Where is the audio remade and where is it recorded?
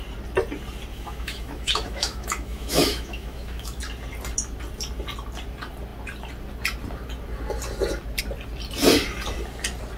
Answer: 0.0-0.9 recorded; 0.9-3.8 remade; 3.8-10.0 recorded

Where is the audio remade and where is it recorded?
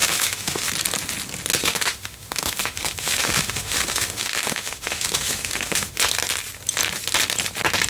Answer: 0.0-0.7 remade; 0.7-1.6 recorded; 1.6-6.0 remade; 6.0-7.9 recorded